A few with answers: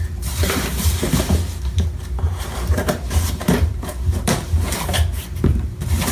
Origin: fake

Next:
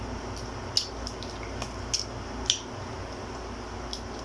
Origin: real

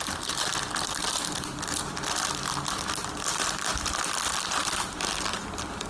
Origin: fake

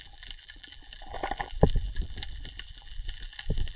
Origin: fake